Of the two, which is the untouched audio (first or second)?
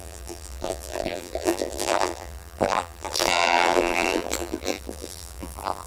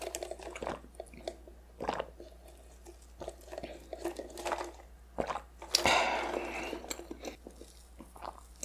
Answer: second